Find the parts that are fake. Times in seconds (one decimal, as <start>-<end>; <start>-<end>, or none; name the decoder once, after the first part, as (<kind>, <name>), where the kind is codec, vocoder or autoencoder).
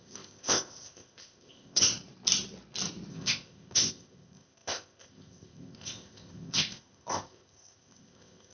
0.0-1.9 (codec, ZipCodec); 3.1-8.5